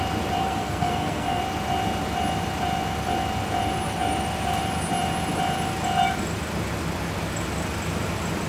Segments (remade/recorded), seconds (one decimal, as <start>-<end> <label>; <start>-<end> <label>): 0.0-0.4 recorded; 0.4-1.4 remade; 1.4-8.5 recorded